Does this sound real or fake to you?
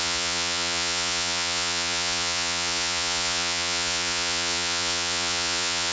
fake